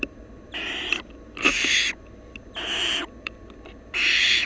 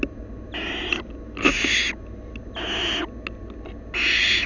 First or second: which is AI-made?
first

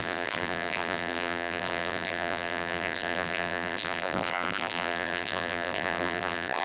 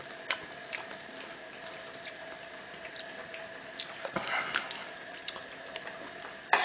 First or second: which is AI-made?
first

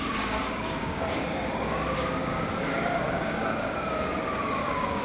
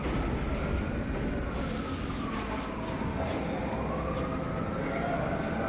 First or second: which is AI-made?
first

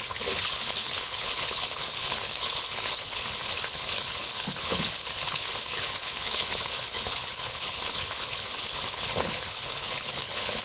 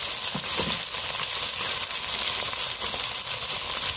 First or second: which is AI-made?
first